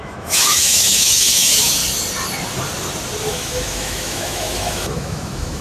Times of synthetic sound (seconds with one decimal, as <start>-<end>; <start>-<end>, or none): 0.0-1.8; 3.2-5.6